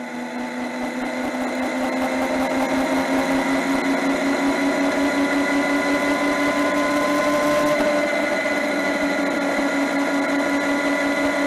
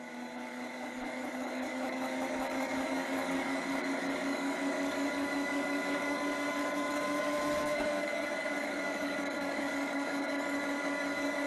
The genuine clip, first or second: first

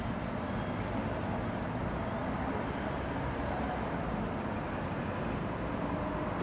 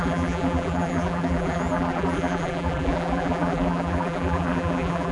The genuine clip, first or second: first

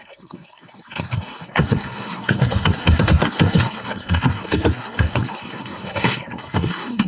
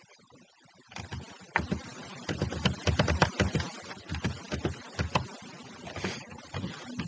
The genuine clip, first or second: second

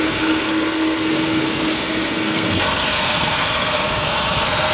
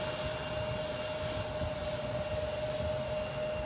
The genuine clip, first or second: second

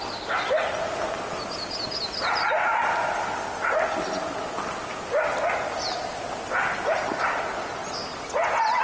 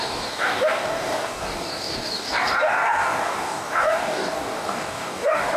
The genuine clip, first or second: first